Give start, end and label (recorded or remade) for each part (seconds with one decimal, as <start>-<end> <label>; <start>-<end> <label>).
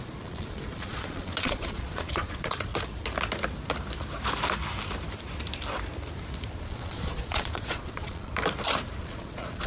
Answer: 0.0-2.7 remade; 2.7-6.6 recorded; 6.6-8.3 remade; 8.3-9.0 recorded; 9.0-9.7 remade